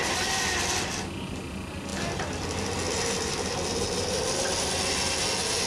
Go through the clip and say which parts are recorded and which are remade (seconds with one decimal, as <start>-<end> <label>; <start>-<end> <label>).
0.0-5.7 recorded